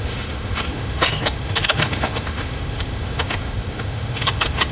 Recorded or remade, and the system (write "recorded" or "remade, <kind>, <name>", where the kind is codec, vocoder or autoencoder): remade, autoencoder, DAC-VAE